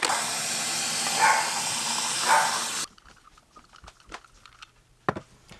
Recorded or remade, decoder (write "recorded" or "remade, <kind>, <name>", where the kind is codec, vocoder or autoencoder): recorded